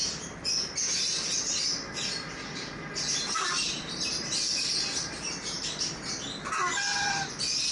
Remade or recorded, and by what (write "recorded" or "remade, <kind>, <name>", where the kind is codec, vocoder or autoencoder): remade, vocoder, BigVGAN v2